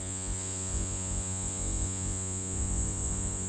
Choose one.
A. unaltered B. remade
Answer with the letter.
B